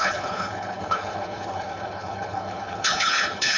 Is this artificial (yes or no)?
yes